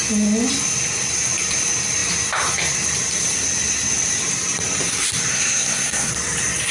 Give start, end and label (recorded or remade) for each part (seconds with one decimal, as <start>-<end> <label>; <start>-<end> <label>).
0.0-5.3 recorded; 5.3-6.1 remade; 6.1-6.7 recorded